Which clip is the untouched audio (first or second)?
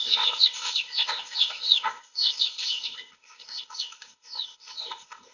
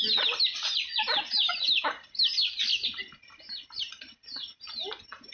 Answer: second